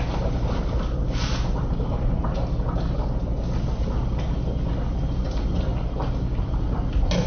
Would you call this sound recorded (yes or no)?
yes